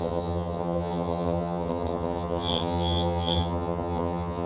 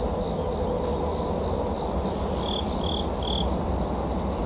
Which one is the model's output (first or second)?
first